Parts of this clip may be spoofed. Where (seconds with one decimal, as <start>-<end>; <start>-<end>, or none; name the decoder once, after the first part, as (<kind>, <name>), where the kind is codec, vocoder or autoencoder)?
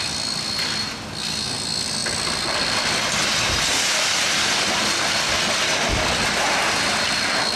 none